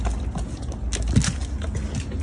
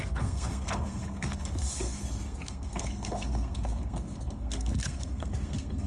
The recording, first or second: first